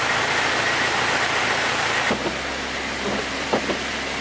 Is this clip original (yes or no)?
yes